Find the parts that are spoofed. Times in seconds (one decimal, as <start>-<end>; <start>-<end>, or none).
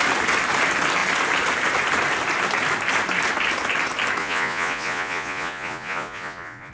4.2-6.7